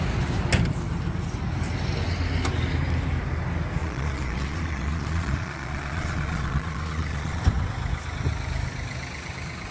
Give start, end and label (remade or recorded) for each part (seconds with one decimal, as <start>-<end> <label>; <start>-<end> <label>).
0.0-3.8 recorded; 3.8-7.4 remade; 7.4-9.7 recorded